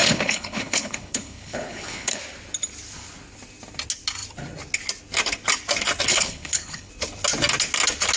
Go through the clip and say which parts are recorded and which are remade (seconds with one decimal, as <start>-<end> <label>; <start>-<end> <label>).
0.0-2.2 remade; 2.2-6.1 recorded; 6.1-6.9 remade; 6.9-8.2 recorded